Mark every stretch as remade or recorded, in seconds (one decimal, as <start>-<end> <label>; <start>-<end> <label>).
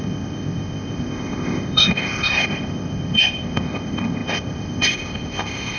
0.0-5.8 remade